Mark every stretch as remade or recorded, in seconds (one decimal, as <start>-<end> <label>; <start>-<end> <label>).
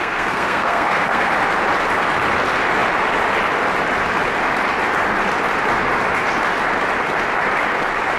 0.0-1.3 remade; 1.3-8.2 recorded